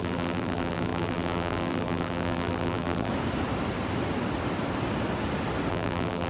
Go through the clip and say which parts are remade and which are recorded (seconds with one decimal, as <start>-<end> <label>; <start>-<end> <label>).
0.0-3.1 remade; 3.1-5.7 recorded; 5.7-6.3 remade

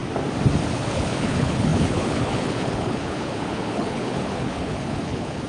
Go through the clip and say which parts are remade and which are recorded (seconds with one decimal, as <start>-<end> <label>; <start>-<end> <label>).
0.0-0.7 recorded; 0.7-5.5 remade